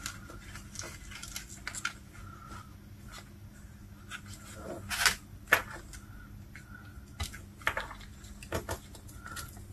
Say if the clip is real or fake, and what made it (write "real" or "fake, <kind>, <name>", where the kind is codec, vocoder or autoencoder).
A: real